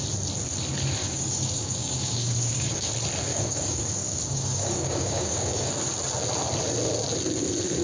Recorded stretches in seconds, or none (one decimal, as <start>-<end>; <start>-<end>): 0.0-1.0; 2.9-3.3; 5.7-7.8